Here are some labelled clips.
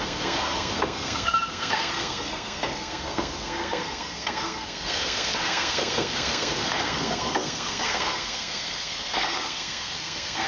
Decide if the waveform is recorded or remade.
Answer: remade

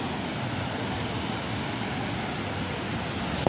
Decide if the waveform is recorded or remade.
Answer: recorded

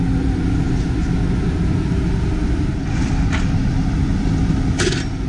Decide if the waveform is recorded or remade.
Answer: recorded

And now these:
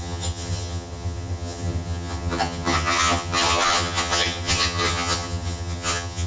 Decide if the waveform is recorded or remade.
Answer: remade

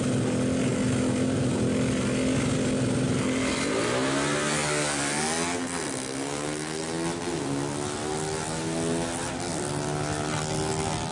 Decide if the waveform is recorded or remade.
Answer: recorded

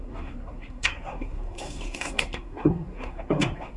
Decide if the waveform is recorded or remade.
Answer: remade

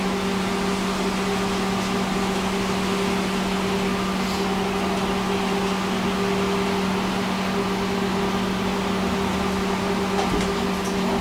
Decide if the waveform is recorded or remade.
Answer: recorded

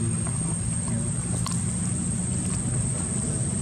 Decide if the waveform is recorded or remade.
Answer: recorded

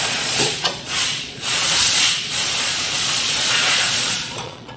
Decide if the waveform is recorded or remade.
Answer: remade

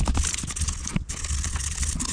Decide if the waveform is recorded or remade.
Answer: recorded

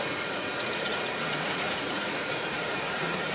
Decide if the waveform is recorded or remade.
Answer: remade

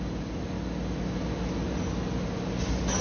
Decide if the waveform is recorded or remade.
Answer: recorded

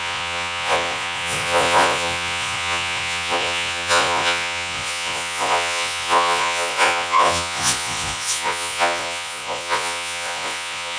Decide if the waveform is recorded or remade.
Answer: remade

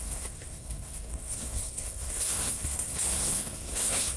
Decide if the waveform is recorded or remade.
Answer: remade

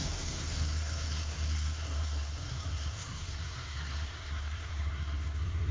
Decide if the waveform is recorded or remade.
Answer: remade